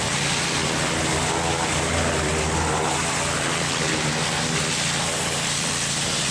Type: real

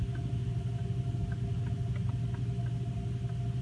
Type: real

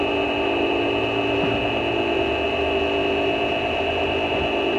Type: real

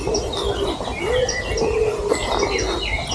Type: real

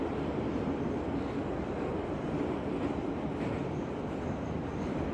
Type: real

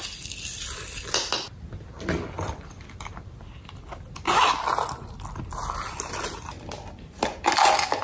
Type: real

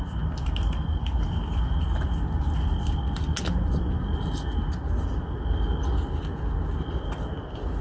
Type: real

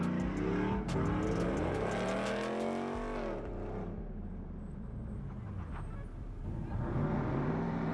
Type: real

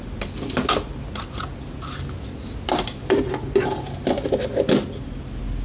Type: real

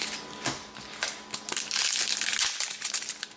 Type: real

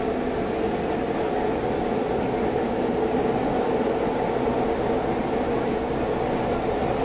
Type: real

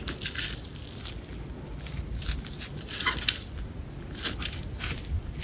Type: real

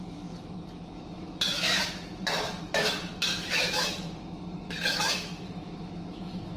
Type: fake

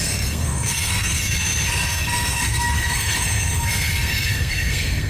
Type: fake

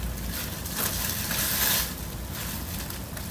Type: real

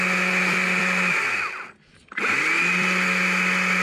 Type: real